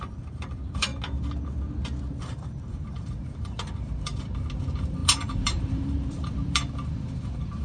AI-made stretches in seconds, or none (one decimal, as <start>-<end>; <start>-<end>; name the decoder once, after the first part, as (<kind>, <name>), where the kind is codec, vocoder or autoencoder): 0.0-0.9 (vocoder, BigVGAN v2); 2.1-4.1; 4.6-7.6